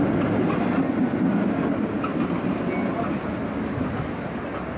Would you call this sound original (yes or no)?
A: yes